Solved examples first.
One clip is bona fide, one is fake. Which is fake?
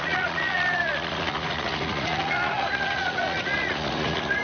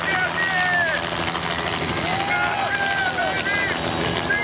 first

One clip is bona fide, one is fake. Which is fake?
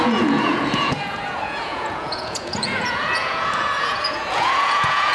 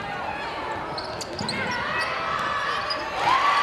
first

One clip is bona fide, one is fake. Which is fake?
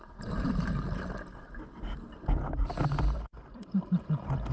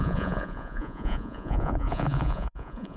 second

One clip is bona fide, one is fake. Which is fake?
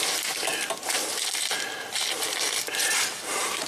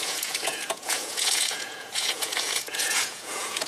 second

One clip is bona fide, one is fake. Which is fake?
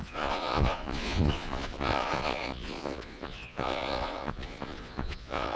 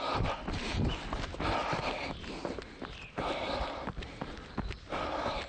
first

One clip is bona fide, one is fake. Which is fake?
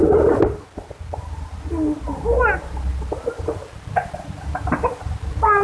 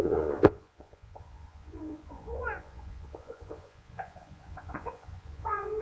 second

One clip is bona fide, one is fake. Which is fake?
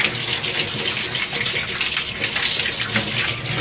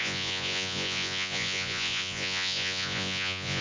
second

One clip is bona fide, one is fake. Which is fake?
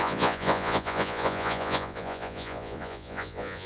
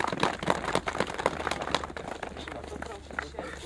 first